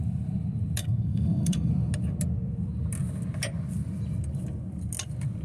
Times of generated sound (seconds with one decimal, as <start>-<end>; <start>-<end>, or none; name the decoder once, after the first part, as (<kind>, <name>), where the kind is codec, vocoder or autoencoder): 0.8-1.7 (codec, SNAC)